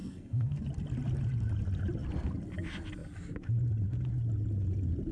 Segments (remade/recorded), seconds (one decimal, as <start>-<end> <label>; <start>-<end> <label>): 0.0-0.6 remade; 0.6-5.1 recorded

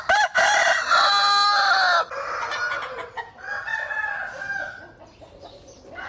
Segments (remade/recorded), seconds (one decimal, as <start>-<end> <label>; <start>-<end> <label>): 0.0-6.1 recorded

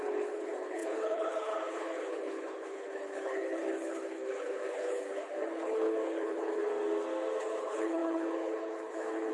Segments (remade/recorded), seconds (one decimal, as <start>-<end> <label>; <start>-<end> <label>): 0.0-6.6 remade; 6.6-7.4 recorded; 7.4-9.3 remade

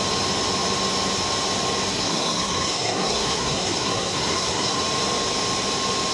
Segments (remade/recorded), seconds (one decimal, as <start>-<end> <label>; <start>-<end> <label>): 0.0-1.9 recorded; 1.9-4.8 remade; 4.8-6.1 recorded

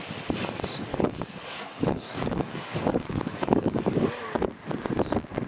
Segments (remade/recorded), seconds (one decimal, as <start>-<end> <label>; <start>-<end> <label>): 0.0-0.9 recorded; 0.9-4.2 remade; 4.2-5.5 recorded

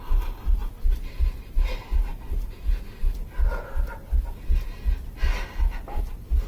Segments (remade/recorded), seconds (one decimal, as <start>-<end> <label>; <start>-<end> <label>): 0.0-6.5 recorded

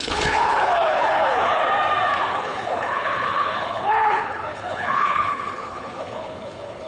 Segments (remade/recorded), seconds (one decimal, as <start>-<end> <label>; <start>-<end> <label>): 0.0-1.6 remade; 1.6-2.3 recorded; 2.3-6.9 remade